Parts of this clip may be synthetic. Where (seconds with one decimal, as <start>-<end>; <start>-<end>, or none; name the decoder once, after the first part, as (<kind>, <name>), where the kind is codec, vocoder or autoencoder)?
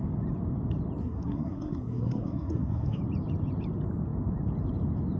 1.0-3.0 (codec, SNAC)